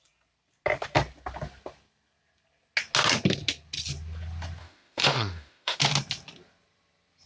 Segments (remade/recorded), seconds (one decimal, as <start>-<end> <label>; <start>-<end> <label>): 0.0-4.6 recorded; 4.6-5.8 remade; 5.8-7.3 recorded